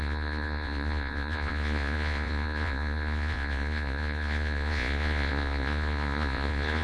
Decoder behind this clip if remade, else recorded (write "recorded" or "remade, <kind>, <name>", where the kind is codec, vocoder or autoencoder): remade, vocoder, Vocos